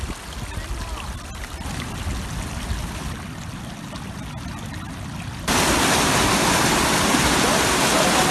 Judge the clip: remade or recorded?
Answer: recorded